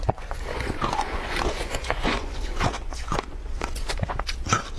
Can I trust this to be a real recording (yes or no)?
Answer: no